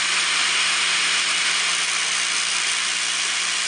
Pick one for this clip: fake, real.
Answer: real